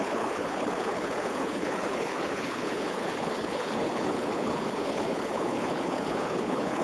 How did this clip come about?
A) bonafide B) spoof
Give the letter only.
B